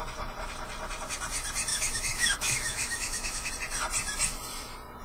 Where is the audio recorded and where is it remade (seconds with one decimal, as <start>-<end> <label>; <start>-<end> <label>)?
0.0-1.7 recorded; 1.7-3.5 remade; 3.5-5.0 recorded